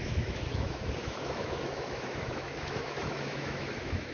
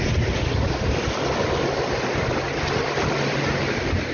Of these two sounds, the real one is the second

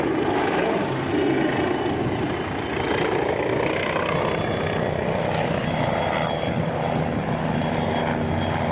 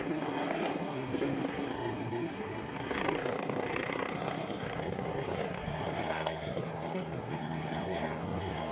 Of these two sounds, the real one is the first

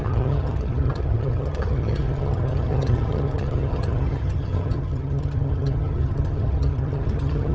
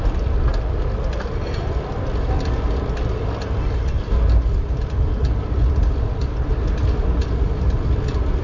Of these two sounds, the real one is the second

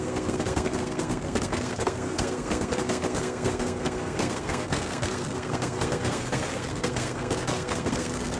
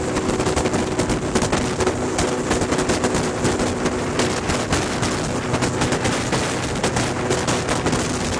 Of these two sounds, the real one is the second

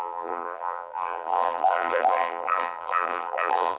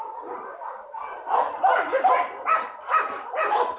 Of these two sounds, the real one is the second